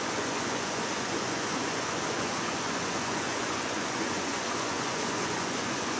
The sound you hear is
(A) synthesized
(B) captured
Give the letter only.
A